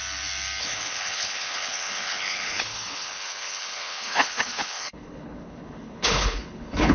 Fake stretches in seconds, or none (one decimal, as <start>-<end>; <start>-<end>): 0.6-6.9